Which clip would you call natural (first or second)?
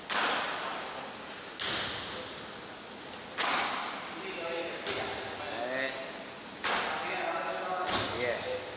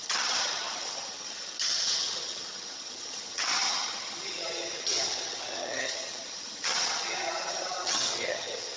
first